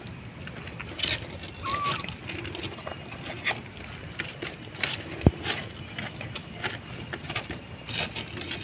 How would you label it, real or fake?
real